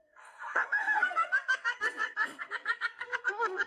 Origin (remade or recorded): remade